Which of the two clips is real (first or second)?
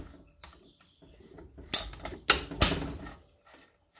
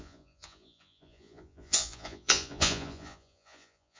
first